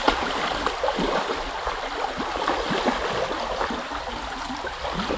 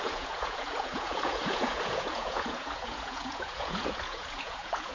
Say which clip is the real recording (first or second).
first